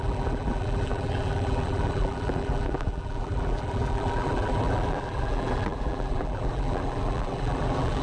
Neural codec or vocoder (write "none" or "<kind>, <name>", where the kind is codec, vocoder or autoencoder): vocoder, BigVGAN v2